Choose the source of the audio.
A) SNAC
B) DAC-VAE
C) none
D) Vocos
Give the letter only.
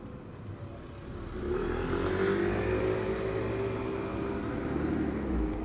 C